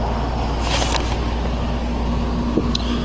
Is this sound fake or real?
real